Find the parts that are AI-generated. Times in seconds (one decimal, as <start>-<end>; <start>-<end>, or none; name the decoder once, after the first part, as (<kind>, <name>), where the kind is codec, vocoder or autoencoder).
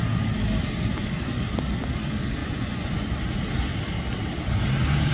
2.4-3.1 (vocoder, Vocos)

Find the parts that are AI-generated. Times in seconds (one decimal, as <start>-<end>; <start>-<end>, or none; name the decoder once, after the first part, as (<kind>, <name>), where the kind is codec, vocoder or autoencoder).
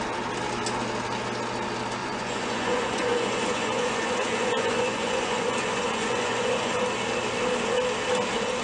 2.0-6.8 (vocoder, Vocos)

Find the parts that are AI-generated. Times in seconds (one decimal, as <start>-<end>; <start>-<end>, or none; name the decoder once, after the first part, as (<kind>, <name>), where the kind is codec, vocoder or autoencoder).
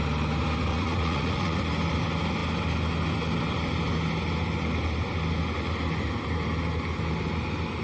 0.7-1.6 (vocoder, Vocos)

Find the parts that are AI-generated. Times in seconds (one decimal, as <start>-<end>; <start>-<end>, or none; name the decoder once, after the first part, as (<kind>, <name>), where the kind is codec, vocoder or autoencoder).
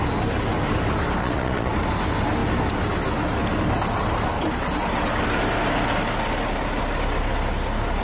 1.2-1.7 (vocoder, Vocos)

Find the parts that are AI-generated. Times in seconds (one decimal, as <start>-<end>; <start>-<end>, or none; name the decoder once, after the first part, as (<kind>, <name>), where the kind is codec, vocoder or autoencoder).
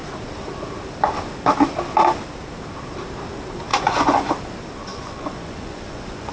3.7-4.3 (vocoder, Vocos); 4.9-6.3